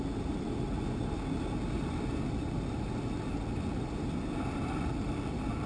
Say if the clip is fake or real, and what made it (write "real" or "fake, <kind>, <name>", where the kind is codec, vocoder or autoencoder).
real